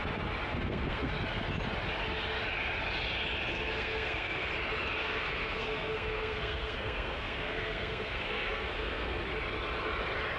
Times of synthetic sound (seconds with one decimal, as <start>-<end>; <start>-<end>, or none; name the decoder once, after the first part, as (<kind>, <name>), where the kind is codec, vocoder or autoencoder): 0.5-1.1 (codec, SNAC); 3.5-4.5; 5.0-9.2